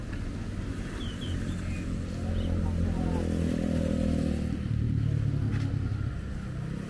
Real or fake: real